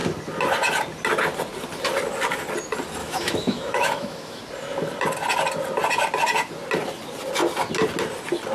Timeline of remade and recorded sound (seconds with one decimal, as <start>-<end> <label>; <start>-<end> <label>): 0.0-3.0 recorded; 3.0-4.4 remade; 4.4-8.5 recorded